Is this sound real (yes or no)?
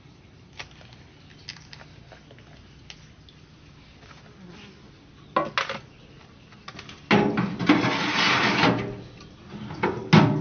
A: yes